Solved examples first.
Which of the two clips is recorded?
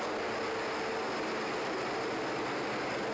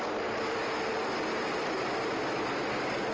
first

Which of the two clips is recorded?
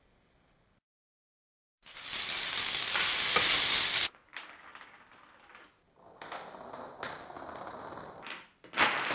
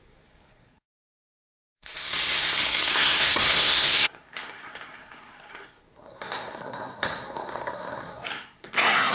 first